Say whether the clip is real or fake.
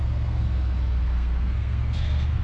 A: fake